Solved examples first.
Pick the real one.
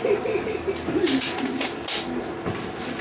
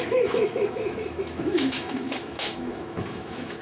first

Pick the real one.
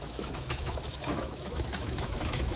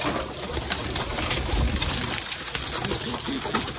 second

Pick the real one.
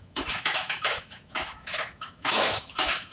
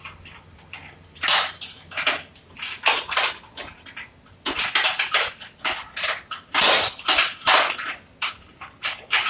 second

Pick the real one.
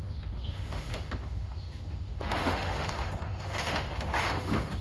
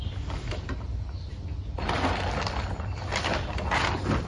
second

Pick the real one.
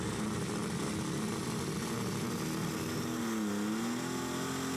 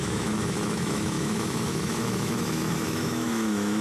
first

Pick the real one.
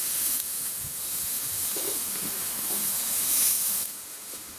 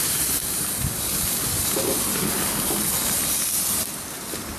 second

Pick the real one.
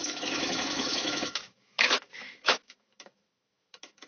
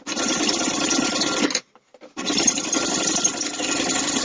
second